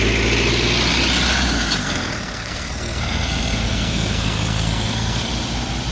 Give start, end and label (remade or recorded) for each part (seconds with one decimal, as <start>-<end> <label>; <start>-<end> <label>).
0.0-1.8 recorded; 1.8-5.3 remade; 5.3-5.9 recorded